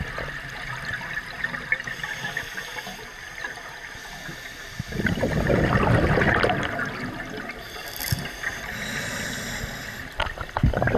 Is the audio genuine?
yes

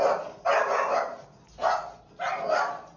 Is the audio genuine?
yes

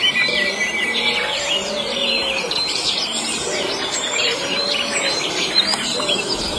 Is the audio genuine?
no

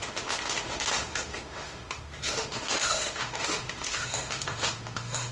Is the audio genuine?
no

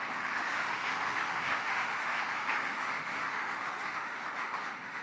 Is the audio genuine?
no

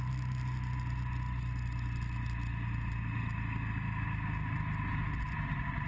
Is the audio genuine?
yes